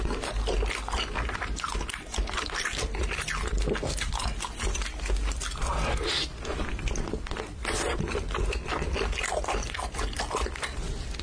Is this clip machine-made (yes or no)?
no